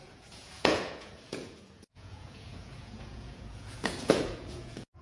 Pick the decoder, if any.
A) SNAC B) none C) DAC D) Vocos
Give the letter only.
D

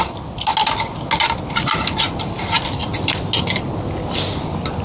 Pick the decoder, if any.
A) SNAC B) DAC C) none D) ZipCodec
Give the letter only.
C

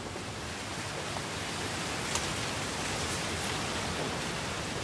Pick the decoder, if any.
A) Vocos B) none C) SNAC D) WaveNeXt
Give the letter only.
B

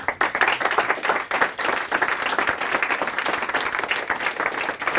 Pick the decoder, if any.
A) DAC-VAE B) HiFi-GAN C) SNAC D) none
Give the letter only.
D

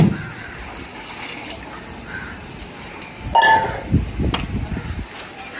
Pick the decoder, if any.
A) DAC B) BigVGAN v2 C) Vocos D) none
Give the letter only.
D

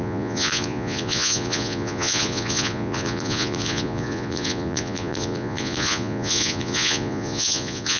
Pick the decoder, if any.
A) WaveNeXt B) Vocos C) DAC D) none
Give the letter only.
B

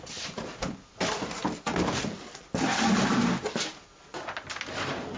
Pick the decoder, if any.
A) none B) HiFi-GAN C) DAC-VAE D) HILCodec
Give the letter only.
A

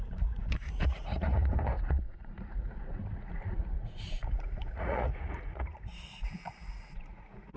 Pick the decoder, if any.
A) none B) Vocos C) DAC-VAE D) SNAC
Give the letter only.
B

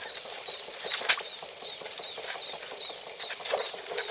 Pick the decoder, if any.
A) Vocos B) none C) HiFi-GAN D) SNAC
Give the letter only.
B